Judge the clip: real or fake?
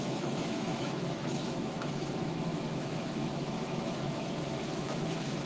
fake